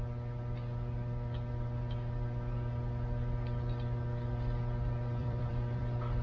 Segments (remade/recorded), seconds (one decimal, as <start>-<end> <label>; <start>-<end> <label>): 0.0-5.2 recorded; 5.2-5.8 remade; 5.8-6.2 recorded